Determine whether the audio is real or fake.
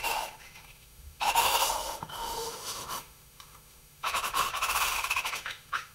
fake